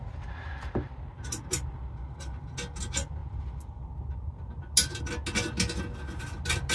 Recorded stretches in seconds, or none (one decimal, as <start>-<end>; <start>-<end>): 0.0-6.7